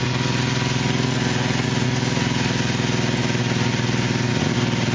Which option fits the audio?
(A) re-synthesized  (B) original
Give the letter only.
B